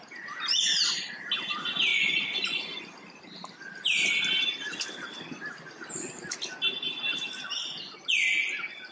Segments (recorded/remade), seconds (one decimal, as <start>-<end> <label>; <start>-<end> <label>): 0.0-1.9 recorded; 1.9-2.8 remade; 2.8-8.9 recorded